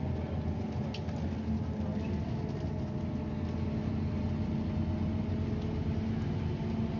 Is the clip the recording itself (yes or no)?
yes